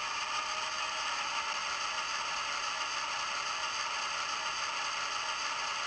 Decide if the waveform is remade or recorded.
recorded